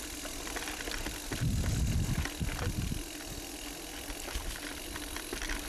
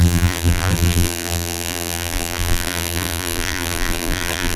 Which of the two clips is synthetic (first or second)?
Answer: second